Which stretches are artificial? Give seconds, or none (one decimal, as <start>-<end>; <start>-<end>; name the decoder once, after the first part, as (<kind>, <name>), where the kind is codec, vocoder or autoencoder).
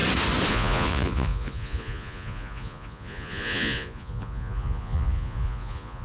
0.5-6.0 (vocoder, Vocos)